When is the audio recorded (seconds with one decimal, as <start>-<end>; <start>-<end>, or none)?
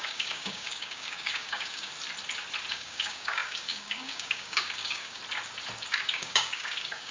1.9-2.7; 5.2-5.9